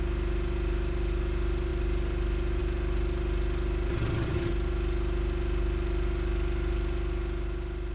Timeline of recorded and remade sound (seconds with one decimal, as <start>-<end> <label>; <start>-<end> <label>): 0.0-3.9 recorded; 3.9-4.5 remade; 4.5-7.9 recorded